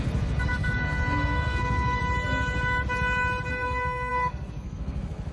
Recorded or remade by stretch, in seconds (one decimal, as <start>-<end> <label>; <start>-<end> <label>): 0.0-2.0 remade; 2.0-3.5 recorded; 3.5-5.3 remade